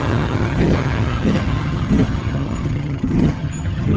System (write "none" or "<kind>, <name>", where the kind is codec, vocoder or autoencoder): vocoder, HiFi-GAN